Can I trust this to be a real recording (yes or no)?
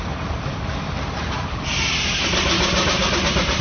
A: no